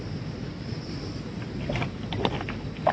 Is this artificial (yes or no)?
no